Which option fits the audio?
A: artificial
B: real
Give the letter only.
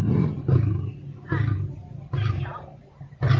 B